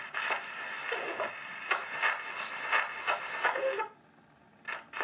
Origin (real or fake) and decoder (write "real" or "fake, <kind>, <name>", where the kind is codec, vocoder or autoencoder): real